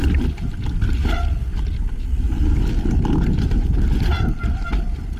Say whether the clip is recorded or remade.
recorded